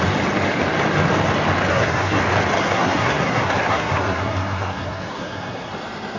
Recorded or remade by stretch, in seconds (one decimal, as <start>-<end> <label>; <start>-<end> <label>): 0.0-1.7 recorded; 1.7-2.2 remade; 2.2-2.6 recorded; 2.6-5.7 remade; 5.7-6.2 recorded